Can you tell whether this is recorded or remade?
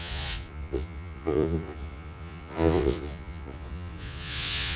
remade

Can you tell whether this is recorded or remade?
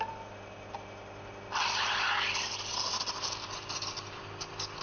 recorded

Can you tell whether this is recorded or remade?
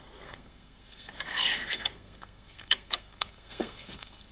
remade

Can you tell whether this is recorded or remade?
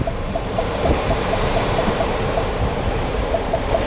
remade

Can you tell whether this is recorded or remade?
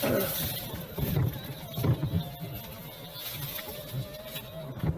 recorded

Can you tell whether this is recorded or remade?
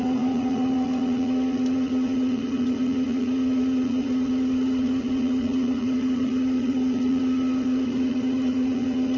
remade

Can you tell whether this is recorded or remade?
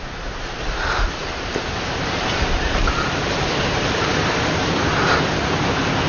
recorded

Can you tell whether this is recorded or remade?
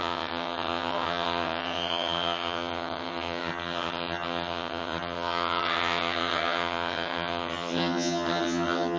remade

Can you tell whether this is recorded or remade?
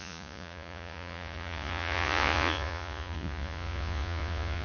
remade